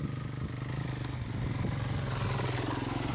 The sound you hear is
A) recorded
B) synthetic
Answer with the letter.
A